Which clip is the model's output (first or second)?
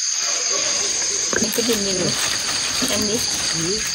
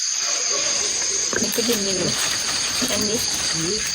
second